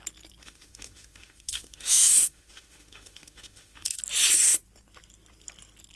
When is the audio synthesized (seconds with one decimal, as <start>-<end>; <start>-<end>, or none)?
0.4-4.0